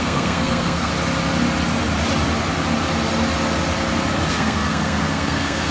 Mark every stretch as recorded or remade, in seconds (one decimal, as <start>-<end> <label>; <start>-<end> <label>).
0.0-0.9 remade; 0.9-4.3 recorded; 4.3-5.7 remade